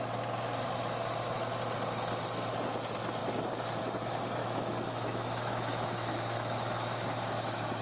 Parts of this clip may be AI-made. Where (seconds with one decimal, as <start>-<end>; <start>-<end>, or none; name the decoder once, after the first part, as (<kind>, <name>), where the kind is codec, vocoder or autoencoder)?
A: 4.4-7.8 (autoencoder, DAC-VAE)

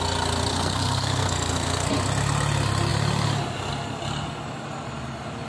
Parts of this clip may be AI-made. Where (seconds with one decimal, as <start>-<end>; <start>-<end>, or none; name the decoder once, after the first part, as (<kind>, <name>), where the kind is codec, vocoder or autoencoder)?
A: 0.5-1.9 (codec, SNAC)

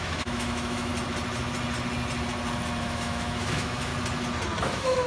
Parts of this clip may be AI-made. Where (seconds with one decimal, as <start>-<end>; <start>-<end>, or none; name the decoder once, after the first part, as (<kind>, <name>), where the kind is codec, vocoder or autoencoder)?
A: 0.0-0.9 (autoencoder, DAC-VAE); 2.8-3.9; 4.6-5.1

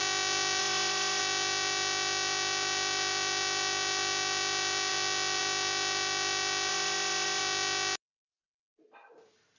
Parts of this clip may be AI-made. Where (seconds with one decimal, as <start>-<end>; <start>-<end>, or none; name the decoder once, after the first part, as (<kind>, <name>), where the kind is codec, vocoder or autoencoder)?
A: 0.6-1.2 (autoencoder, DAC-VAE); 6.7-7.4